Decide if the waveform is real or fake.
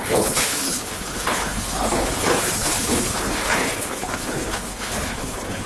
fake